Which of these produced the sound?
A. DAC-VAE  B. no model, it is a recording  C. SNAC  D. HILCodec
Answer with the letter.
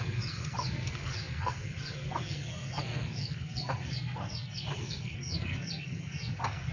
C